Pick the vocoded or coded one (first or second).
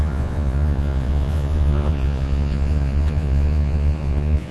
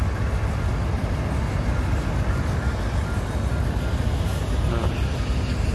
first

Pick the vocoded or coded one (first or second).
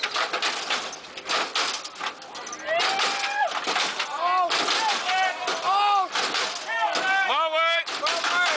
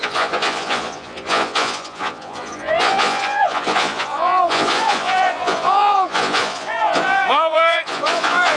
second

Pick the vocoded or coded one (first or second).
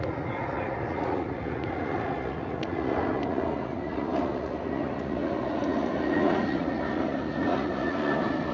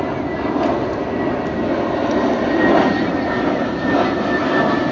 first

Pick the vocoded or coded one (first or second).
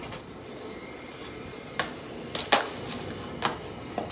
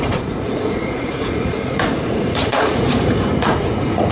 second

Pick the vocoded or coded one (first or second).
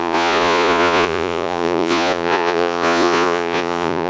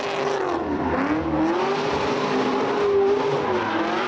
first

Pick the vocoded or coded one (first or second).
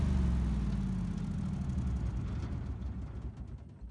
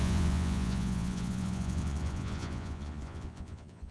second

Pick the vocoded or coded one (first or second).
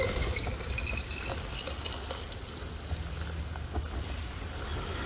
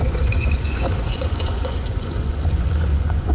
second